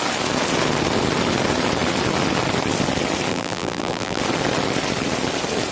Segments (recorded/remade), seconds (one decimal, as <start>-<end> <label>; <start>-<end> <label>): 0.0-3.3 recorded; 3.3-4.2 remade; 4.2-5.7 recorded